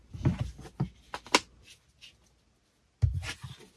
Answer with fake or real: real